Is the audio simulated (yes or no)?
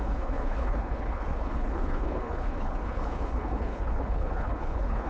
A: yes